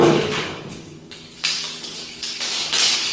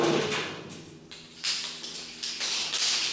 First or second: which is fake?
first